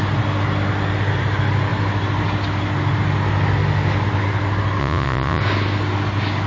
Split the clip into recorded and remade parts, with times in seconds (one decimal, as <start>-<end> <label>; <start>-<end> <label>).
0.0-4.8 recorded; 4.8-5.4 remade; 5.4-6.5 recorded